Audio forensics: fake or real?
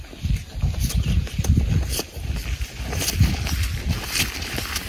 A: real